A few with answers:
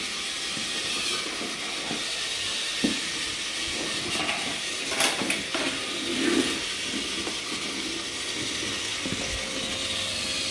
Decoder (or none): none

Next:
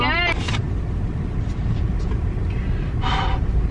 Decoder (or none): none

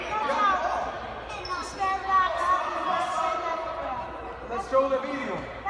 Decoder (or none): none